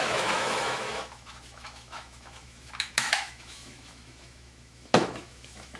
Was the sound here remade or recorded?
remade